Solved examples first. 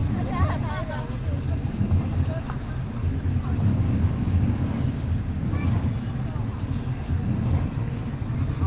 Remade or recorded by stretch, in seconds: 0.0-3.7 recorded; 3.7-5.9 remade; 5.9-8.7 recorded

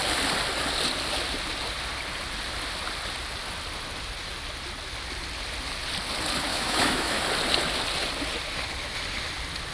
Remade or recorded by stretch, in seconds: 0.0-6.5 recorded; 6.5-7.2 remade; 7.2-9.7 recorded

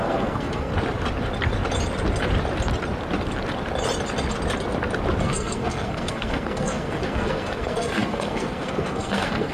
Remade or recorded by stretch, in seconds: 0.0-0.7 remade; 0.7-5.2 recorded; 5.2-9.5 remade

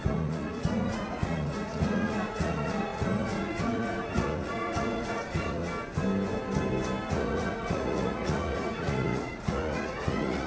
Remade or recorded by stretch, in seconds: 0.0-5.6 remade; 5.6-7.1 recorded; 7.1-10.5 remade

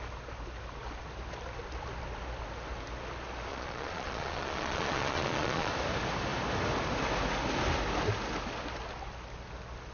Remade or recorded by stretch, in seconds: 0.0-3.5 recorded; 3.5-5.7 remade; 5.7-9.9 recorded

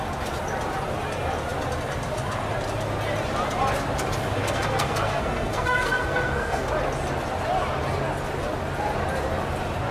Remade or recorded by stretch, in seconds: 0.0-4.4 recorded; 4.4-6.7 remade; 6.7-9.9 recorded

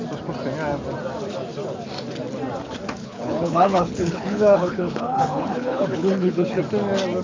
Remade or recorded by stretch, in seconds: 0.0-3.0 recorded; 3.0-6.6 remade; 6.6-7.2 recorded